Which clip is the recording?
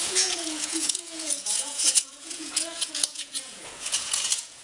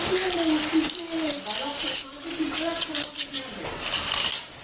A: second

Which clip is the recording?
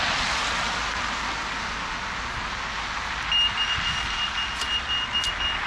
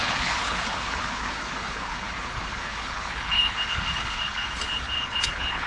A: first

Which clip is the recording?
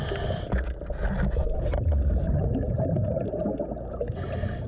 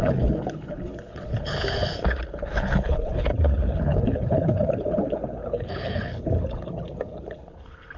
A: first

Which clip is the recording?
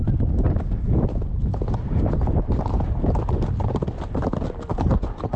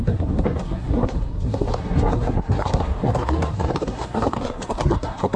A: first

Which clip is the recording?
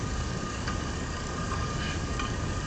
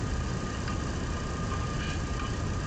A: second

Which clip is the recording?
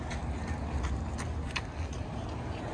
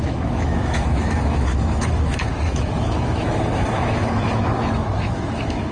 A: first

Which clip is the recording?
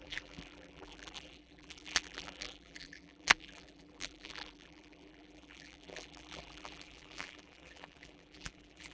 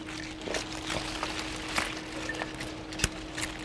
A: second